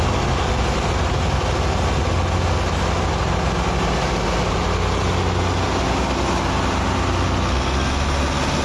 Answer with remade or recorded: recorded